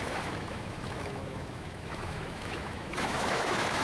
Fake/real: fake